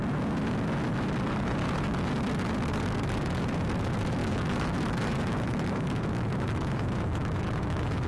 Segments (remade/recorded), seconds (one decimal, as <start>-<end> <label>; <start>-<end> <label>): 0.0-4.2 recorded; 4.2-8.1 remade